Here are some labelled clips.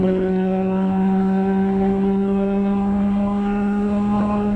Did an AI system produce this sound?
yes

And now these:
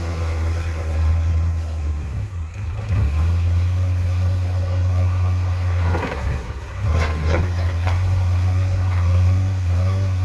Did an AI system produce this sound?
yes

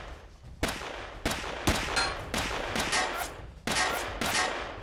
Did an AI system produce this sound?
no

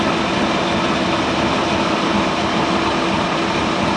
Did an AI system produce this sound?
no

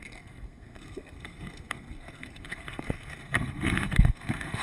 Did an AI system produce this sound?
yes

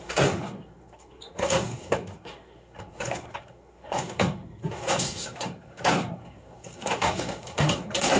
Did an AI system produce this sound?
yes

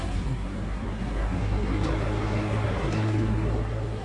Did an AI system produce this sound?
yes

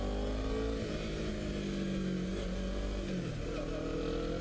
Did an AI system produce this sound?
no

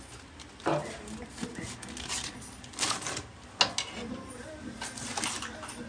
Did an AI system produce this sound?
no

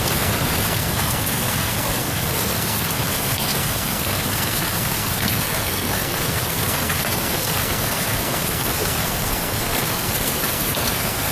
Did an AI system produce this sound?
yes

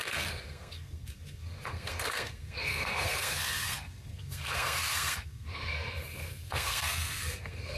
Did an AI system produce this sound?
yes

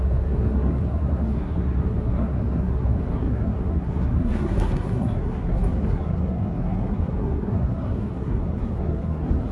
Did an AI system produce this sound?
yes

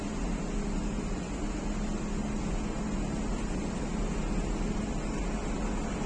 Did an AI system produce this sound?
no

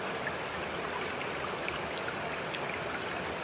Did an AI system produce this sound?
no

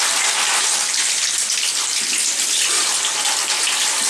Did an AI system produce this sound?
no